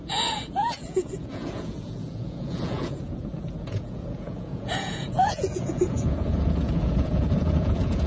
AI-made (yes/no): yes